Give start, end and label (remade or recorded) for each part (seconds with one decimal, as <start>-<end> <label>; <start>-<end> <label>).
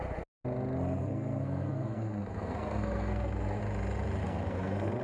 0.0-1.0 recorded; 1.0-3.6 remade; 3.6-4.2 recorded; 4.2-5.0 remade